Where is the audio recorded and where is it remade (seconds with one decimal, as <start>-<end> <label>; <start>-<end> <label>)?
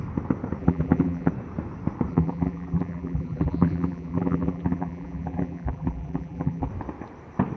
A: 0.0-0.6 recorded; 0.6-1.3 remade; 1.3-2.1 recorded; 2.1-6.7 remade; 6.7-7.6 recorded